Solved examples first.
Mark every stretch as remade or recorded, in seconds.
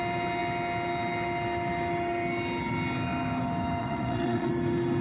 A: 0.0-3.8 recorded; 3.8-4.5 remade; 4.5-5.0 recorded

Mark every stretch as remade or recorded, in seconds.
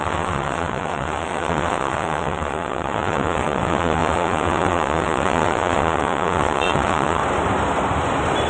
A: 0.0-7.2 remade; 7.2-8.5 recorded